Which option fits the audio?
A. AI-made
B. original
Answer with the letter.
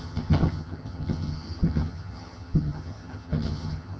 A